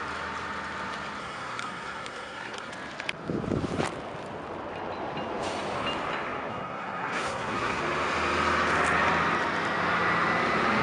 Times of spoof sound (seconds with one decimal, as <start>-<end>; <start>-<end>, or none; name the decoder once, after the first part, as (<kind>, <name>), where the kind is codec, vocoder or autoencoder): 1.2-2.7 (codec, SNAC); 6.5-7.8